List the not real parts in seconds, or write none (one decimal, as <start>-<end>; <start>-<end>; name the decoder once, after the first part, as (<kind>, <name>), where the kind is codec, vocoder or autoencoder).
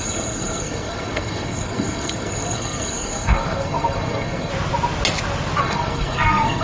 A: 0.0-4.5 (codec, SNAC); 5.6-6.6